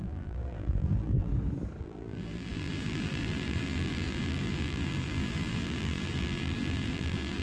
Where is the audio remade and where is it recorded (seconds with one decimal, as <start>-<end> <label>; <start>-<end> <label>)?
0.0-1.3 remade; 1.3-1.8 recorded; 1.8-7.4 remade